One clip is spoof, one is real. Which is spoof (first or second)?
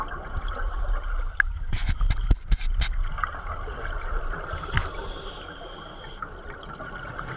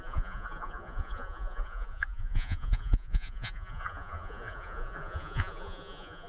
second